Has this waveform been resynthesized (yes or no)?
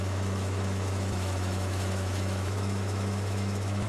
yes